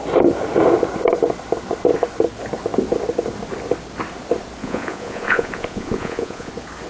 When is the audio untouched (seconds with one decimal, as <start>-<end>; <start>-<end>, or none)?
0.0-4.6; 6.5-6.9